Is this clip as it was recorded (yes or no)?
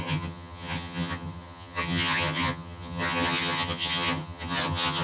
no